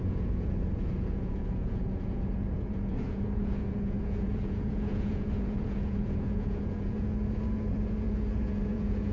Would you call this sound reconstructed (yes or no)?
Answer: yes